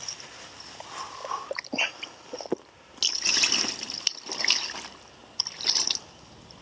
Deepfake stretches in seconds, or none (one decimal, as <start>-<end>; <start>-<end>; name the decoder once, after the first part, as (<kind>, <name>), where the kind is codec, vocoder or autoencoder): none